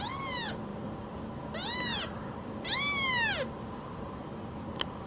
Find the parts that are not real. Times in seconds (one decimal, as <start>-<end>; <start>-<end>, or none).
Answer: none